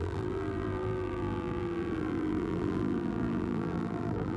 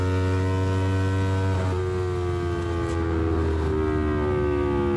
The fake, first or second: first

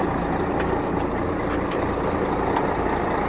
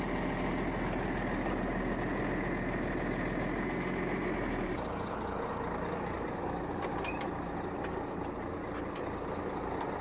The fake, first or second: first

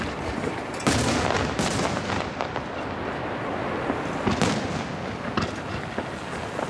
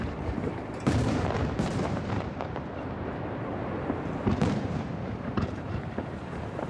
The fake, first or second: second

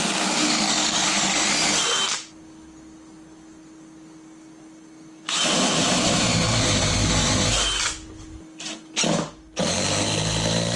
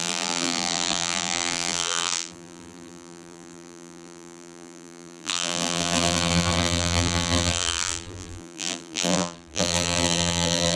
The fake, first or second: second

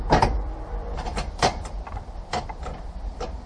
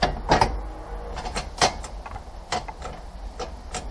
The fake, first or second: first